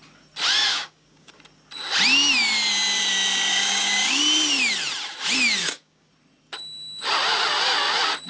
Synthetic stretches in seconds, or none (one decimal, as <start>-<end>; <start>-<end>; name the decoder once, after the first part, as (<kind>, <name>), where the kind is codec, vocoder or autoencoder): 0.7-1.3 (codec, DAC); 3.5-4.2; 5.6-6.1